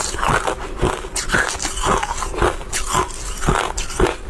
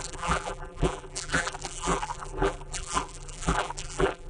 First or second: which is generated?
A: second